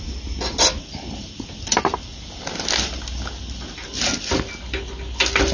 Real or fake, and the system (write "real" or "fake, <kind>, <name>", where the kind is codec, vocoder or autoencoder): real